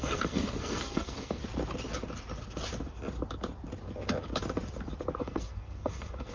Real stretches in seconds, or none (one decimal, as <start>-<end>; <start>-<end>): 1.4-5.2